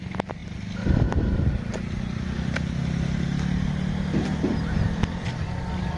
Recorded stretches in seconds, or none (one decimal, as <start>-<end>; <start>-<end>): 0.0-6.0